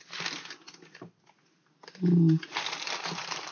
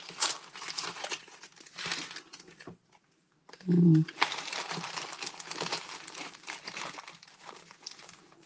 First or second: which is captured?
first